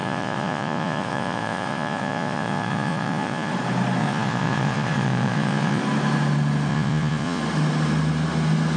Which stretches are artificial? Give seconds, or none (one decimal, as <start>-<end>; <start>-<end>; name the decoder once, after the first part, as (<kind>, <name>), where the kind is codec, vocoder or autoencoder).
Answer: 0.0-3.5 (vocoder, Vocos); 4.0-5.8; 6.7-7.4